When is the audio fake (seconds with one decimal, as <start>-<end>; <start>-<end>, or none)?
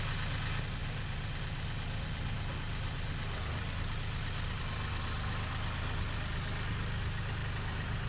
none